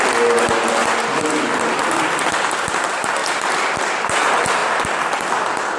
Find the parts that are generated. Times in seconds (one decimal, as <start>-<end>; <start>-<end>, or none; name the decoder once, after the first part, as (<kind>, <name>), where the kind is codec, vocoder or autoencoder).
0.8-2.1 (vocoder, BigVGAN v2); 3.2-3.8; 4.6-5.8